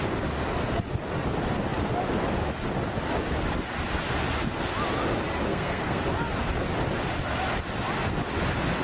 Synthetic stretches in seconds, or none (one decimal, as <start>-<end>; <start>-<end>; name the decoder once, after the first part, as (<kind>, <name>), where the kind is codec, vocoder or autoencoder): 5.5-6.0 (codec, SNAC)